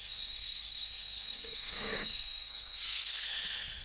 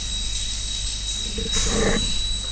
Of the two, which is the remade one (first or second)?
first